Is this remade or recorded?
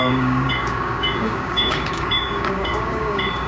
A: remade